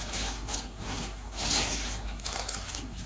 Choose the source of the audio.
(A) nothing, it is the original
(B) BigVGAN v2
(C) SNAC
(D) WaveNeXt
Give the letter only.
C